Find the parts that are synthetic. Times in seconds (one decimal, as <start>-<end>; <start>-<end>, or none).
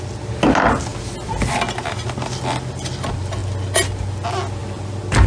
none